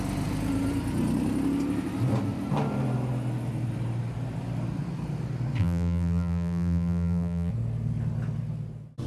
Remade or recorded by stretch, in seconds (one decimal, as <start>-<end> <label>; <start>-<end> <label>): 0.0-5.6 recorded; 5.6-7.5 remade; 7.5-9.1 recorded